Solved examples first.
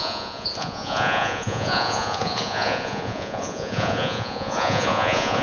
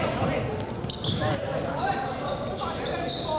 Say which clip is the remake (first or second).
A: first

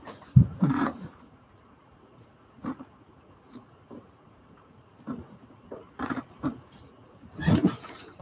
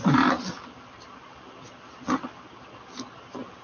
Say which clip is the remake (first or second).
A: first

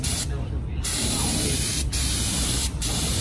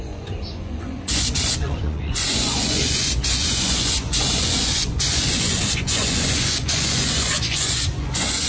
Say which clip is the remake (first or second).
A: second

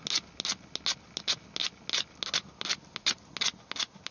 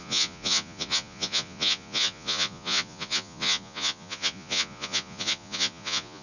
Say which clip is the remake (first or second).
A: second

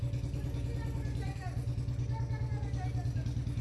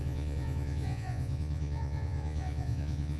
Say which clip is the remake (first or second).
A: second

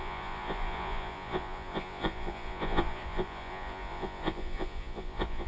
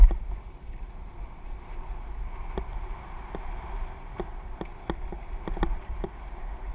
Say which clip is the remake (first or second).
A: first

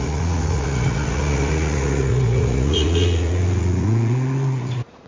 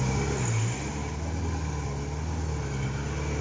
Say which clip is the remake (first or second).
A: first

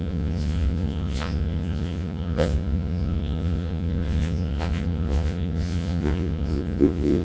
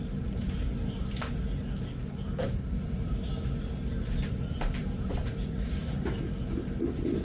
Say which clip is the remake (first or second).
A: first